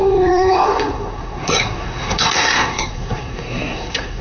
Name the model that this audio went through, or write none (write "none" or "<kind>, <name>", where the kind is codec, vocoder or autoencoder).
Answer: codec, SNAC